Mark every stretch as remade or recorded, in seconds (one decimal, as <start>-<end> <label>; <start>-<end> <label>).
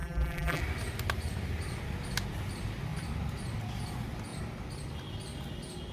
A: 0.0-0.6 remade; 0.6-5.9 recorded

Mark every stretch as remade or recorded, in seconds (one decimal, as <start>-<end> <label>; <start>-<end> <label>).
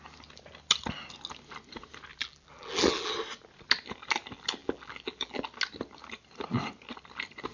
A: 0.0-2.1 recorded; 2.1-3.1 remade; 3.1-4.6 recorded; 4.6-5.4 remade; 5.4-7.5 recorded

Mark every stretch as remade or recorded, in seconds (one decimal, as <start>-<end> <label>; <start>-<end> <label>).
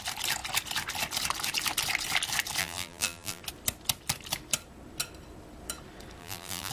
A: 0.0-2.6 recorded; 2.6-3.4 remade; 3.4-6.2 recorded; 6.2-6.7 remade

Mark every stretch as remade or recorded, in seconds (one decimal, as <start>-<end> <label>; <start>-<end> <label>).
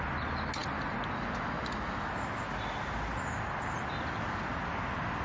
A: 0.0-5.2 recorded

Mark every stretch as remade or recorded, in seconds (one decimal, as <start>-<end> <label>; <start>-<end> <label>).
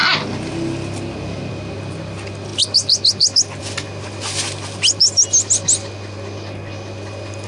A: 0.0-7.5 recorded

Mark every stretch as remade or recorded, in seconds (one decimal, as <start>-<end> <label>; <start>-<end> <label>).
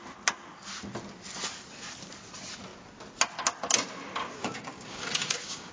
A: 0.0-4.2 recorded; 4.2-5.7 remade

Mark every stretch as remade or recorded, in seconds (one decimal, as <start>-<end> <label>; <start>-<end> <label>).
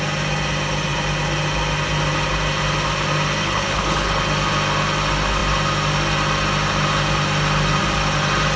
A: 0.0-3.4 recorded; 3.4-4.2 remade; 4.2-8.6 recorded